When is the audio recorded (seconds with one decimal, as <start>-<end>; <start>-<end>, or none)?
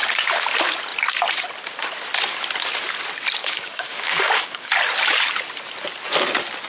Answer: 0.0-3.4; 4.7-6.7